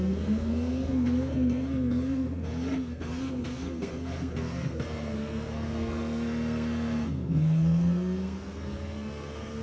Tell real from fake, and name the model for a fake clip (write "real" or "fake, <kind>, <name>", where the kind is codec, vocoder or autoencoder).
fake, codec, SNAC